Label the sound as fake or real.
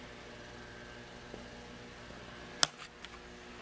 real